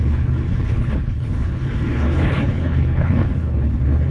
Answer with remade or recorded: remade